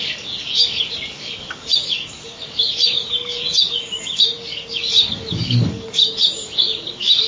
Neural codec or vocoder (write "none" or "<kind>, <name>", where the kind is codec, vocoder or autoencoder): codec, DAC